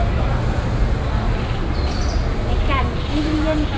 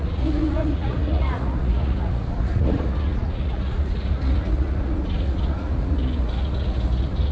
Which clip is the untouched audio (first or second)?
first